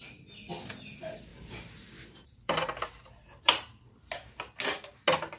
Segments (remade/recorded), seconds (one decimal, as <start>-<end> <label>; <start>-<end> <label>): 0.0-1.3 recorded; 1.3-4.1 remade; 4.1-5.4 recorded